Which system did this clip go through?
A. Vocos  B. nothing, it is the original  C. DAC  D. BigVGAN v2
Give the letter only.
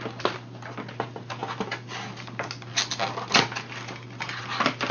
B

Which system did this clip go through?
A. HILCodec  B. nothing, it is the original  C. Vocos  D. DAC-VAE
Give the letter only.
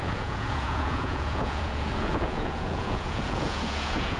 C